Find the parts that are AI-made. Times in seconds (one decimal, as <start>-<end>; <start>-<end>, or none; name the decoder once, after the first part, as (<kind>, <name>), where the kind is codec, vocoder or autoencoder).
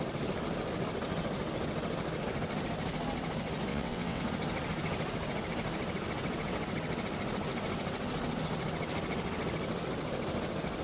3.7-4.2 (vocoder, WaveNeXt)